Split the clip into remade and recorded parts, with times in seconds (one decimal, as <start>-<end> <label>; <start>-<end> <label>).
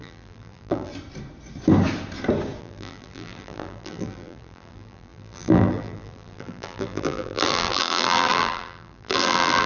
0.0-0.9 remade; 0.9-2.6 recorded; 2.6-9.7 remade